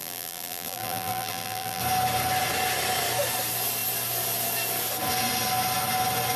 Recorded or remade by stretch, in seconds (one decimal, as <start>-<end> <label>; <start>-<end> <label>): 0.0-1.8 remade; 1.8-6.4 recorded